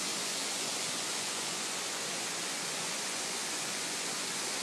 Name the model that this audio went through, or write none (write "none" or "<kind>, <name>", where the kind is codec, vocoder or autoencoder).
vocoder, Vocos